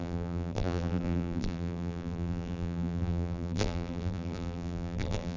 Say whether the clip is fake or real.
fake